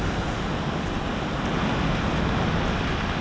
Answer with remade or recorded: recorded